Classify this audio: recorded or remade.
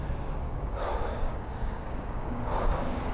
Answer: remade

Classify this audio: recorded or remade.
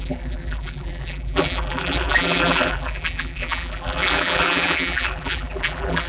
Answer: remade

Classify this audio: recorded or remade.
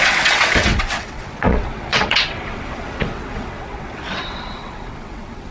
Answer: remade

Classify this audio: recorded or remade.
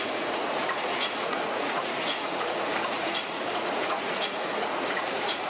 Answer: remade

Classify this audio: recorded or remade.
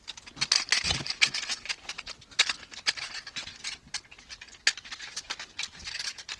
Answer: recorded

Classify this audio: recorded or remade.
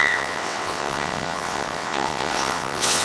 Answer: remade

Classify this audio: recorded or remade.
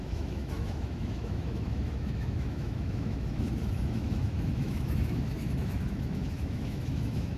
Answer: remade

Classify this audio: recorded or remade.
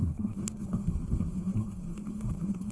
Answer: remade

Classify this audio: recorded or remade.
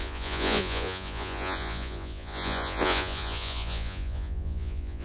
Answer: remade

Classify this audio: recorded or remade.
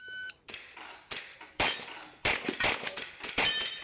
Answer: remade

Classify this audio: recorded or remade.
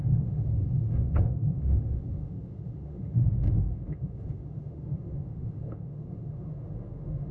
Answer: remade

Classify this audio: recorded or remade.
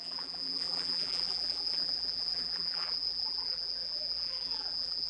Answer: remade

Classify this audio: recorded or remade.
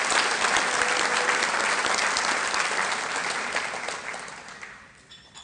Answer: recorded